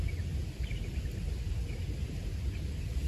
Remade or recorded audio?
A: recorded